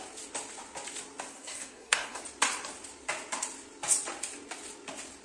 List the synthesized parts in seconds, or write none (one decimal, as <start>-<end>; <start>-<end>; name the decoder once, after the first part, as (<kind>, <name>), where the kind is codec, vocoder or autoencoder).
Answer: 1.3-2.2 (codec, SNAC)